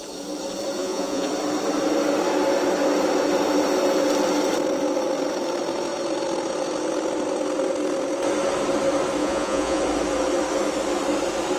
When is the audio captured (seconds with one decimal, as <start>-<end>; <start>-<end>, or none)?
0.0-0.8; 1.3-9.2; 9.8-11.6